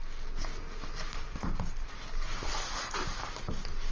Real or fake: real